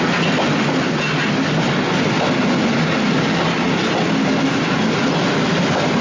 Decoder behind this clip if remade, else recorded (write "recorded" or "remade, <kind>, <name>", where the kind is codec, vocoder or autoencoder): recorded